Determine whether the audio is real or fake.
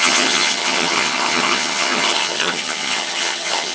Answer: fake